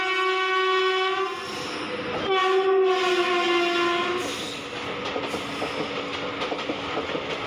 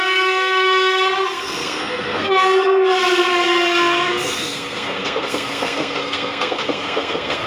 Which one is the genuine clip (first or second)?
first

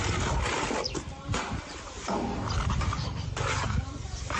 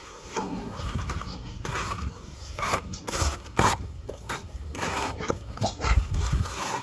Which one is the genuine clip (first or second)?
first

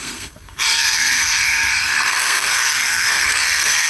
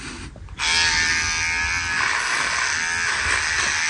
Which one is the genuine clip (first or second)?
second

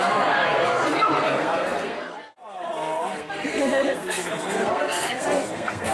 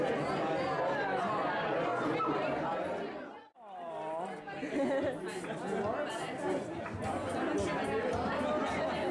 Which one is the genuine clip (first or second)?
second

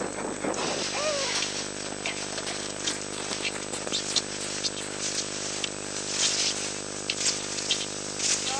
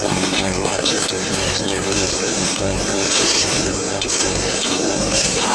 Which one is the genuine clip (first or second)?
first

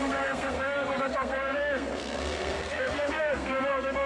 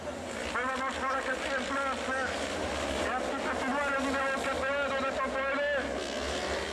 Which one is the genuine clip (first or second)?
second